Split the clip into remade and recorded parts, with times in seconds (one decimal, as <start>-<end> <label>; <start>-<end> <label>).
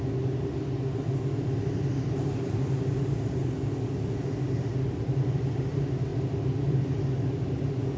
0.0-8.0 recorded